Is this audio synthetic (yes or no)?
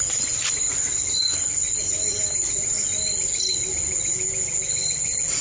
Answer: no